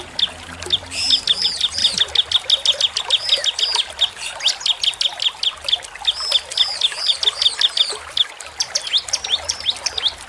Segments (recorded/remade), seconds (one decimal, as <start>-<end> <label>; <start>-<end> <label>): 0.0-10.3 recorded